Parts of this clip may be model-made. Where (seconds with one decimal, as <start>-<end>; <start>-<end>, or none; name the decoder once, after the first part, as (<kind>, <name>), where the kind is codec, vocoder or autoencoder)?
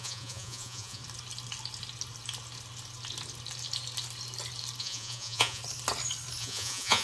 0.0-1.0 (vocoder, Vocos); 4.8-5.6; 6.4-7.0